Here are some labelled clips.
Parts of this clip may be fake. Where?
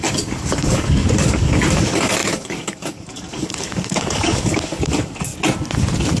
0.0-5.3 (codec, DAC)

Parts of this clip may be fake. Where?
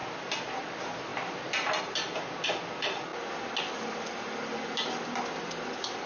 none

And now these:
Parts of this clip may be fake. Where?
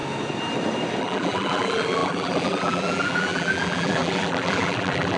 1.0-5.2 (vocoder, BigVGAN v2)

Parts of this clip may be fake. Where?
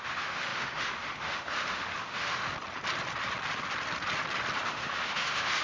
0.0-2.5 (autoencoder, DAC-VAE); 4.6-5.6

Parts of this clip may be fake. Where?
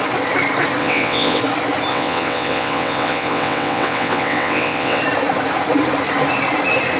0.8-1.4 (vocoder, WaveNeXt); 1.9-5.0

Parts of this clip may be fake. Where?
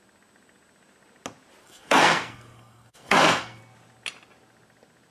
1.6-3.6 (codec, SNAC)